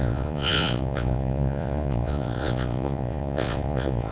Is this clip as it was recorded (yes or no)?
no